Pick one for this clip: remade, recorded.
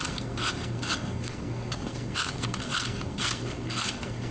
remade